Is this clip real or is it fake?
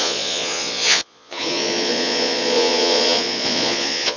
fake